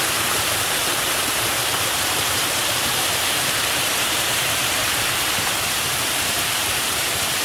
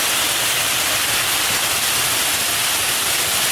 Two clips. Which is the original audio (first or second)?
second